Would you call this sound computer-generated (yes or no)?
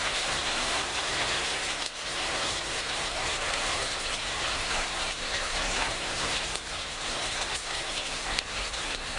yes